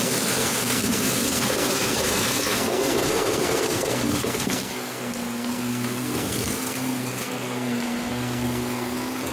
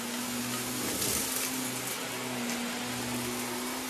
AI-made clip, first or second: first